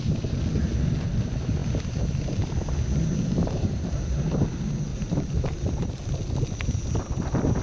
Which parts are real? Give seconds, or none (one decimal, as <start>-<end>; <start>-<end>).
0.0-3.4; 4.0-4.9; 5.9-7.6